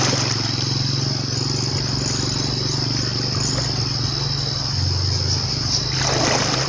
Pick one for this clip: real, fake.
real